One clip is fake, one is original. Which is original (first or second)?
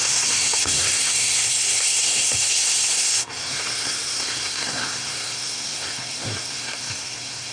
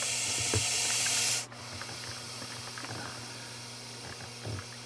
second